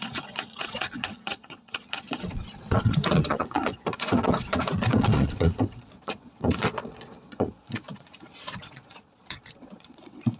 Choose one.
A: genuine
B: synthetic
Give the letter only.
B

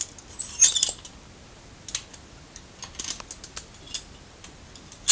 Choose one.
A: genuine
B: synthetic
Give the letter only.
A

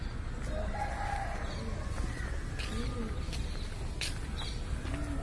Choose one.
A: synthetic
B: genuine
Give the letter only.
B